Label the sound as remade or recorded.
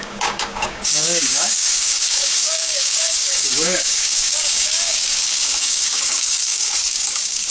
remade